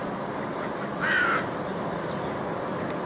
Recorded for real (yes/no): yes